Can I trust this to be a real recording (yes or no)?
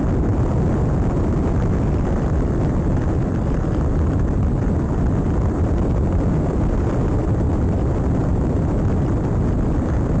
yes